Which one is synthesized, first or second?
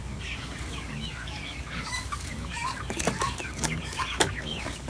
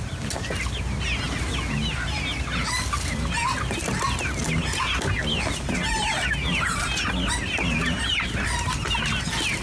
first